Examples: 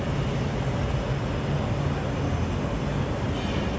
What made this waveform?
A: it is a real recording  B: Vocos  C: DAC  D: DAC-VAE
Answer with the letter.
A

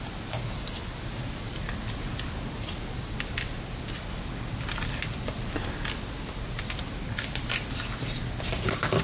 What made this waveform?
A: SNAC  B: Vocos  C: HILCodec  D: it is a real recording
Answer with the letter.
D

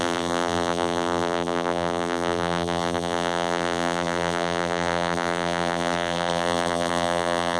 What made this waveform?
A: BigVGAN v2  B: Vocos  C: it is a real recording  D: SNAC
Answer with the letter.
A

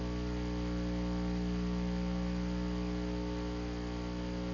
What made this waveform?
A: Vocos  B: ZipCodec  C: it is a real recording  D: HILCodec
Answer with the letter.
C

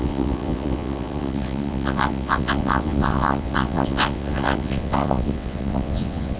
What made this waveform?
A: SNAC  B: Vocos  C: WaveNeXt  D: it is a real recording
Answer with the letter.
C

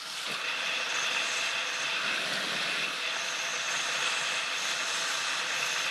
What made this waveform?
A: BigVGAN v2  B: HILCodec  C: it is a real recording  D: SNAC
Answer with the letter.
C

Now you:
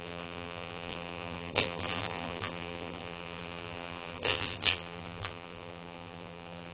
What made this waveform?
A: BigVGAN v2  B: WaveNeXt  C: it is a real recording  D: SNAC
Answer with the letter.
A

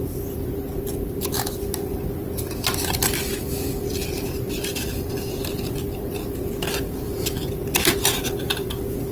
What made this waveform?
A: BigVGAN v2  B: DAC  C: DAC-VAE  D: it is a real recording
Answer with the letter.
D